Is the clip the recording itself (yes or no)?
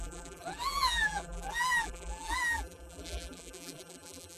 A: no